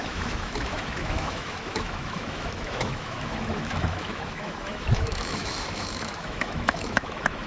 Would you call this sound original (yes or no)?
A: no